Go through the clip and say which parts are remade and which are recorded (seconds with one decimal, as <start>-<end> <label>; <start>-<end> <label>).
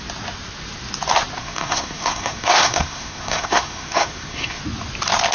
0.0-1.4 recorded; 1.4-4.6 remade; 4.6-5.3 recorded